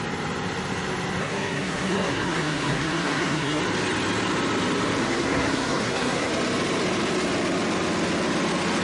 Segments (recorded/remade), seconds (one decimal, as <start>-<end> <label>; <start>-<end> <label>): 0.0-1.2 recorded; 1.2-3.6 remade; 3.6-5.0 recorded; 5.0-6.3 remade; 6.3-8.8 recorded